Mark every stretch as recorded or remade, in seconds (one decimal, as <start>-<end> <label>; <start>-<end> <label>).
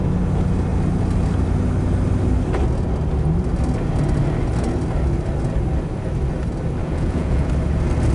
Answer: 0.0-6.8 recorded; 6.8-7.5 remade; 7.5-8.1 recorded